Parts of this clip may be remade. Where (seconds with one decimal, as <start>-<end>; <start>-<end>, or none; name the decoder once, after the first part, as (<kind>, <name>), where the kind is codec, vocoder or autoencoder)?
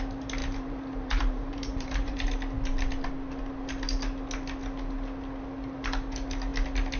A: 0.4-2.3 (vocoder, BigVGAN v2)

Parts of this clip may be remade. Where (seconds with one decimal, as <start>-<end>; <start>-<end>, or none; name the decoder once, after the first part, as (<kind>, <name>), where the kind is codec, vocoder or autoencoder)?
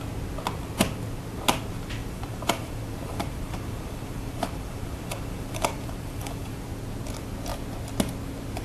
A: 2.0-6.6 (vocoder, BigVGAN v2)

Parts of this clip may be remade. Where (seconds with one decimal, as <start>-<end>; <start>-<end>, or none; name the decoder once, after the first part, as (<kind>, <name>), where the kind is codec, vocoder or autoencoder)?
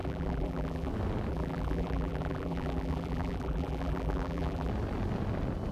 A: 0.0-0.9 (vocoder, BigVGAN v2); 1.3-4.7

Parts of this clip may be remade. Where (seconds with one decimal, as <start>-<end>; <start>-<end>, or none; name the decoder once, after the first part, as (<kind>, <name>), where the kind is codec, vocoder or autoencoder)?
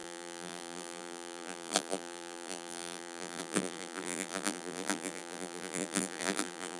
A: 0.0-6.8 (vocoder, BigVGAN v2)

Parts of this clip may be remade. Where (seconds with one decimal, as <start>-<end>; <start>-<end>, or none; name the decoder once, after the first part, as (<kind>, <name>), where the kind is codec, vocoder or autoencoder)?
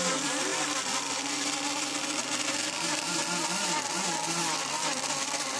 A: 0.0-5.6 (vocoder, BigVGAN v2)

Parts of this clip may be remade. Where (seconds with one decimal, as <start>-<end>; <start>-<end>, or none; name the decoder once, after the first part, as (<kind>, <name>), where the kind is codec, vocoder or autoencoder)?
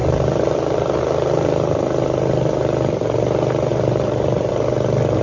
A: 0.0-1.0 (vocoder, BigVGAN v2); 3.7-4.5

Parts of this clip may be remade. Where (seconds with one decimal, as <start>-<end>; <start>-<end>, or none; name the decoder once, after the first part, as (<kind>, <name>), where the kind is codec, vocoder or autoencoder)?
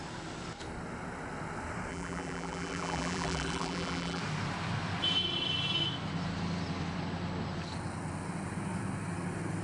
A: 1.9-4.2 (vocoder, BigVGAN v2)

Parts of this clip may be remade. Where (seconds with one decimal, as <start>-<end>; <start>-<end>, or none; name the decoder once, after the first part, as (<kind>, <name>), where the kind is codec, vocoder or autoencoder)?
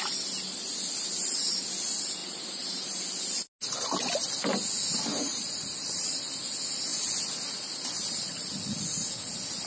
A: 2.2-3.0 (vocoder, BigVGAN v2); 5.1-6.1